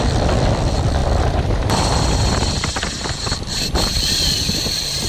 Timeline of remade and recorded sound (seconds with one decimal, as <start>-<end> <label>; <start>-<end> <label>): 0.0-5.1 remade